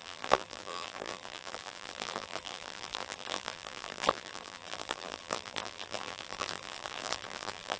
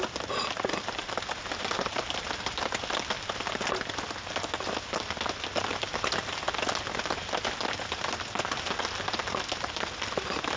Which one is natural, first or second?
second